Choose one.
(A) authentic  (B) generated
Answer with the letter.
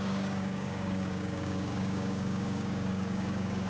B